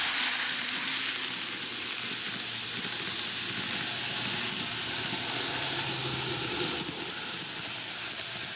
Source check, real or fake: real